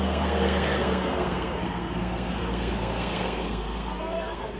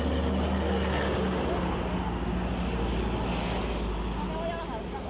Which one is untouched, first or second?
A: second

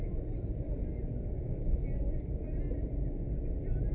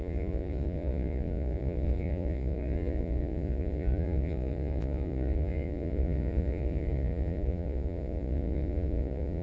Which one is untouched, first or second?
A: first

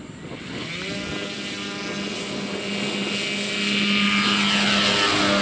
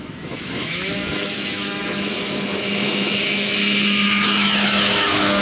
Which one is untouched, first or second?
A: first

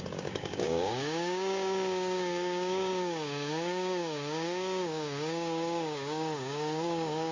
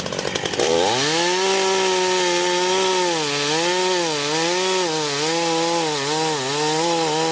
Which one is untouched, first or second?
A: second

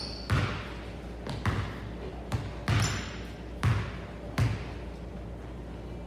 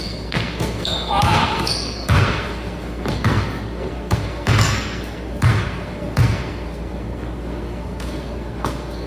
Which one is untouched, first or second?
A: first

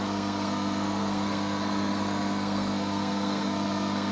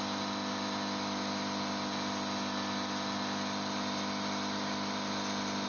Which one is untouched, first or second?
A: second